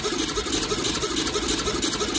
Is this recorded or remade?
recorded